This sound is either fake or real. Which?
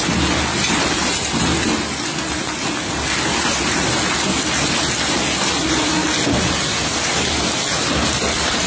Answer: real